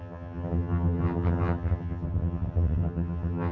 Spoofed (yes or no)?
yes